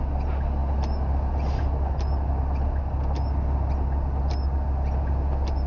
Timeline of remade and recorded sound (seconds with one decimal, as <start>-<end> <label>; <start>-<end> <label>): 0.0-5.7 recorded